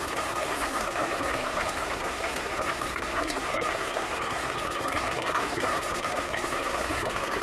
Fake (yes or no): yes